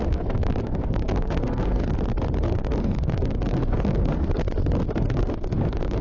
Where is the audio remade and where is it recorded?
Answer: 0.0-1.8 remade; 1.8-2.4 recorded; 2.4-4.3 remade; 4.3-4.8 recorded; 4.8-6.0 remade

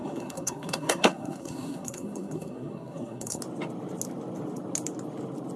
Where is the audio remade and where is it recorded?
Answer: 0.0-3.4 remade; 3.4-5.6 recorded

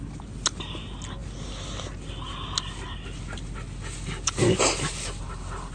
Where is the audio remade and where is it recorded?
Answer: 0.0-5.7 recorded

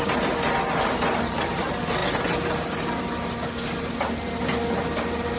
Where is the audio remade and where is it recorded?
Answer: 0.0-5.4 recorded

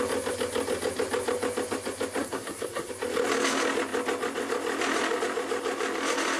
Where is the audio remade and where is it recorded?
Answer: 0.0-2.2 recorded; 2.2-2.9 remade; 2.9-6.4 recorded